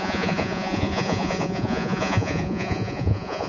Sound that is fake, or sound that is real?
fake